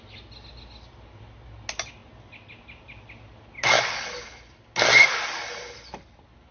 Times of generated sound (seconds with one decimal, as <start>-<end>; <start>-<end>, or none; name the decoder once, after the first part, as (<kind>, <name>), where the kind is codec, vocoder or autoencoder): none